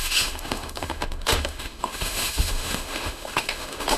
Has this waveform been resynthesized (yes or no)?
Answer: yes